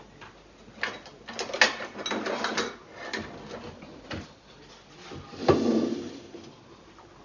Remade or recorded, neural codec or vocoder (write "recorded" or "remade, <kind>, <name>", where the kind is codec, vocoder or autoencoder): recorded